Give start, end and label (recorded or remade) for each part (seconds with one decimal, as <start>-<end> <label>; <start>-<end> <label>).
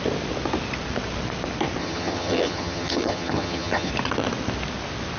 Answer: 0.0-1.8 recorded; 1.8-3.9 remade; 3.9-5.2 recorded